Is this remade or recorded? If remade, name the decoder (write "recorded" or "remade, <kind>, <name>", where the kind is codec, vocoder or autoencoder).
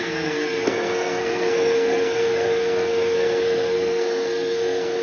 remade, codec, SNAC